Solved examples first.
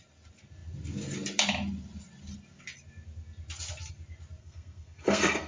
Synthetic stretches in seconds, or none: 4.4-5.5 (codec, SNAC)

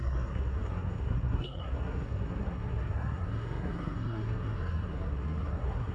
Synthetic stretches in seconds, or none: 0.0-5.9 (codec, SNAC)